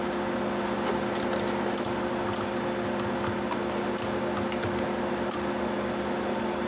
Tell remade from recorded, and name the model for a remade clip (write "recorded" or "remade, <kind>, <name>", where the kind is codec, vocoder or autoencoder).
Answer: recorded